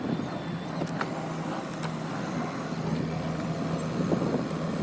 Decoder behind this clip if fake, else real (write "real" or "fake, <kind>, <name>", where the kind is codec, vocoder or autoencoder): real